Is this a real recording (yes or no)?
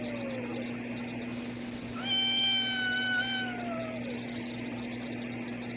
yes